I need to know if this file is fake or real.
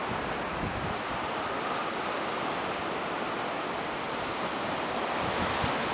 real